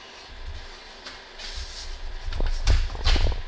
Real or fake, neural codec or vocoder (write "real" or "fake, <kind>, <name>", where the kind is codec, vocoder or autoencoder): real